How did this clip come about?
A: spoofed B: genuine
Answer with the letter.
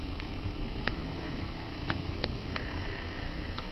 A